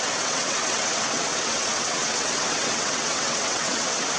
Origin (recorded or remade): remade